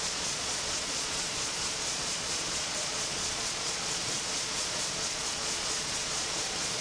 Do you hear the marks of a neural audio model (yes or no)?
yes